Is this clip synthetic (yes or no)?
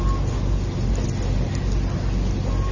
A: no